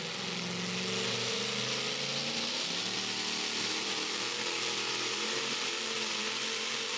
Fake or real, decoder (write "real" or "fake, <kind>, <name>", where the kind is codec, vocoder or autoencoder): real